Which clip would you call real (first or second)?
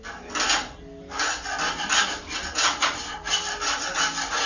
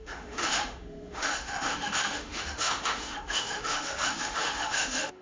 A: first